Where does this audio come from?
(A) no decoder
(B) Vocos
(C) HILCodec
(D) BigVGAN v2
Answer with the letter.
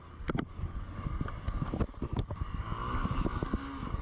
A